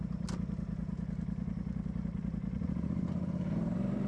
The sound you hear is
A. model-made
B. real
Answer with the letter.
A